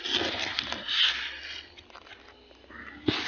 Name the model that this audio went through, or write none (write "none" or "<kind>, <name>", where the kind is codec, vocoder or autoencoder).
none